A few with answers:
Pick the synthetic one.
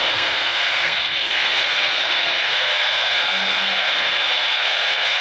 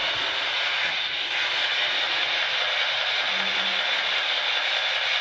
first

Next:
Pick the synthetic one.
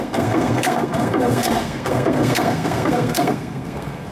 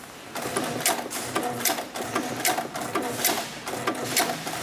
first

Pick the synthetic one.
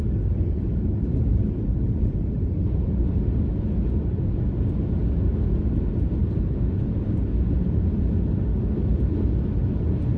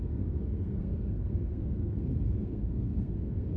second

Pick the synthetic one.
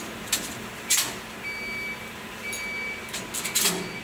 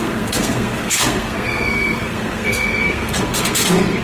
second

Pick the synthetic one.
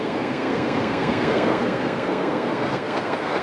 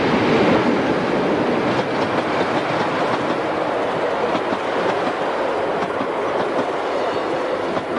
first